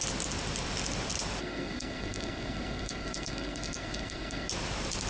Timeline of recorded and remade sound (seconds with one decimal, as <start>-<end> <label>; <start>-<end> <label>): 0.0-1.4 recorded; 1.4-4.5 remade; 4.5-5.1 recorded